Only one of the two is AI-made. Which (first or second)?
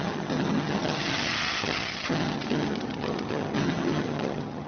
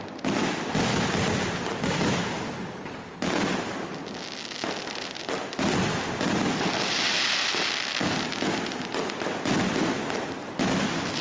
first